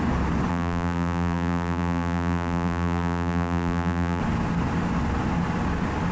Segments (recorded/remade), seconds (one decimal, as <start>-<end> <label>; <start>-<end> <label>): 0.0-0.5 recorded; 0.5-4.2 remade; 4.2-6.1 recorded